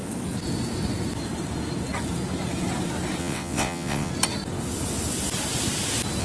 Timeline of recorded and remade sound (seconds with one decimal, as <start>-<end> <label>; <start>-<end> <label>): 0.0-3.2 recorded; 3.2-4.1 remade; 4.1-6.2 recorded